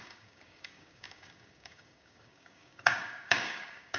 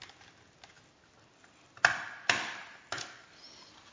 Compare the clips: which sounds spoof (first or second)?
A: first